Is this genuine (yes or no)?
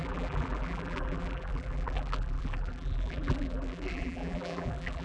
no